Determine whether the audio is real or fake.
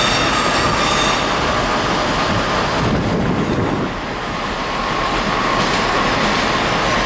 real